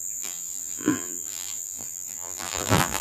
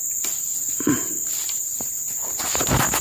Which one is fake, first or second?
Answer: first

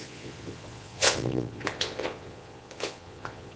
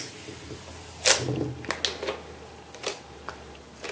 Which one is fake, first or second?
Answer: first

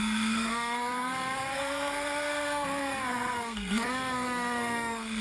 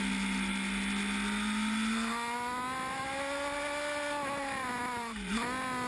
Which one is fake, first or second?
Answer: first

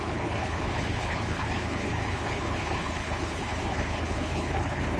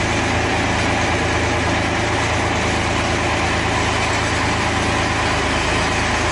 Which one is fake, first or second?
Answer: first